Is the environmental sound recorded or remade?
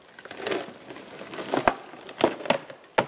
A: recorded